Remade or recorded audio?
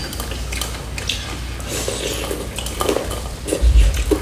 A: recorded